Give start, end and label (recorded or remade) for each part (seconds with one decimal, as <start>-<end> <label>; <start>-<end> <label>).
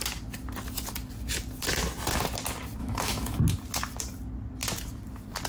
0.0-2.8 recorded; 2.8-3.4 remade; 3.4-5.5 recorded